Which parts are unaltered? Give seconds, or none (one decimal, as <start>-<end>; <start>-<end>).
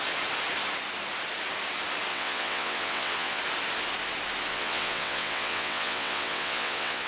0.0-2.1; 3.4-4.5